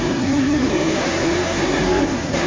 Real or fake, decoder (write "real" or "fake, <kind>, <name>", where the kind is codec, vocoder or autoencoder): fake, codec, SNAC